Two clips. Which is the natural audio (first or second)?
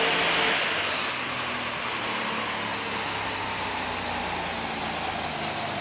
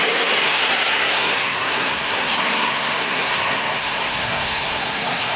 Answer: first